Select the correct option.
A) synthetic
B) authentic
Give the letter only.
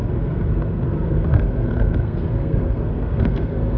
A